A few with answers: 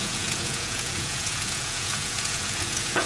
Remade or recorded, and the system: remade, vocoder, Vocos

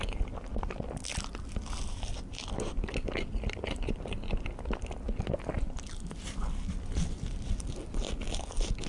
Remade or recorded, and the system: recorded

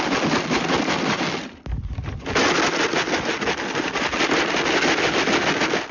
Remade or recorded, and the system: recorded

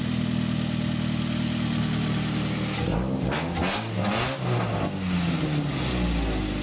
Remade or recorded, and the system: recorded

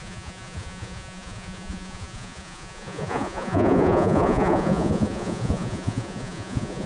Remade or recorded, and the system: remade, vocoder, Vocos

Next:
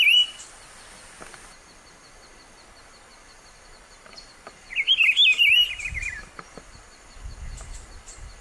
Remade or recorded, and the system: recorded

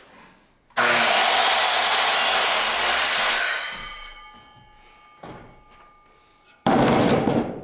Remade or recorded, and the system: recorded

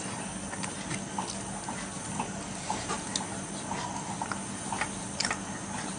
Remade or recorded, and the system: recorded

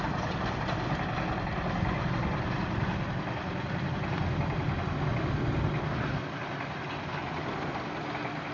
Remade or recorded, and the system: recorded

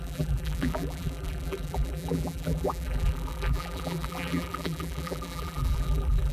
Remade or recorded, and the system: remade, vocoder, BigVGAN v2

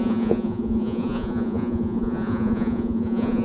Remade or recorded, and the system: remade, vocoder, Vocos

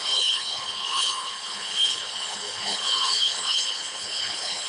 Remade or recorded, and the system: remade, codec, HILCodec